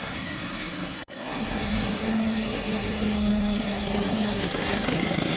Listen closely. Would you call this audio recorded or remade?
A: remade